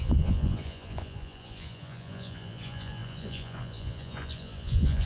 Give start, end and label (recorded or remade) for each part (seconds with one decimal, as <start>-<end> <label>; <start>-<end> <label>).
0.0-5.1 remade